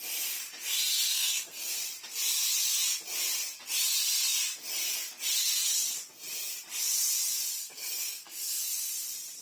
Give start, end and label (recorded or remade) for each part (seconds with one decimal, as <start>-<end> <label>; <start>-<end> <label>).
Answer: 0.0-1.1 recorded; 1.1-1.7 remade; 1.7-7.6 recorded; 7.6-8.9 remade; 8.9-9.4 recorded